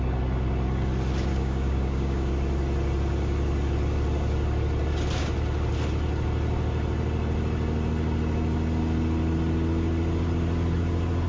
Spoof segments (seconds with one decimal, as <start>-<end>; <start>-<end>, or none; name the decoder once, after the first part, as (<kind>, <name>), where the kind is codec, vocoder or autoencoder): 1.3-2.3 (codec, DAC)